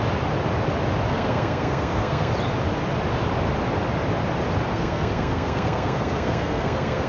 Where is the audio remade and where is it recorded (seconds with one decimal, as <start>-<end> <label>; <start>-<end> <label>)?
0.0-1.1 recorded; 1.1-2.3 remade; 2.3-4.7 recorded; 4.7-7.1 remade